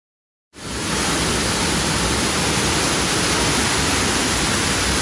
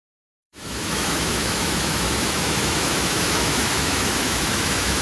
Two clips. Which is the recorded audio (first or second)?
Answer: first